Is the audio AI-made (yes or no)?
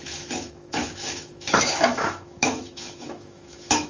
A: yes